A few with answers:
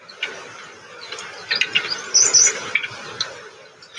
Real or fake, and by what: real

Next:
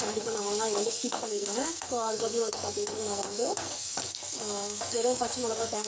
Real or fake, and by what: fake, codec, SNAC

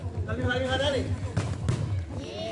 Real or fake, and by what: real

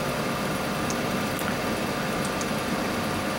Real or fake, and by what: real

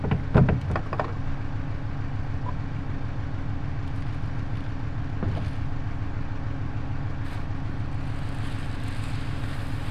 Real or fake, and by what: real